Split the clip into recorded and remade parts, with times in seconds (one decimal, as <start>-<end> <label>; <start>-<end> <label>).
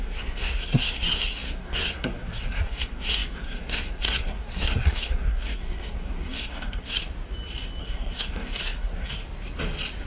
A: 0.0-7.0 remade; 7.0-7.8 recorded; 7.8-9.2 remade; 9.2-10.1 recorded